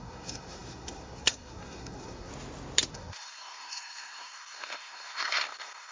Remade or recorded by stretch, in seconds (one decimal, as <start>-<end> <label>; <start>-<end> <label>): 0.0-2.3 remade; 2.3-2.9 recorded; 2.9-5.9 remade